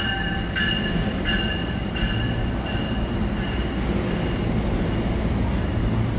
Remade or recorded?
recorded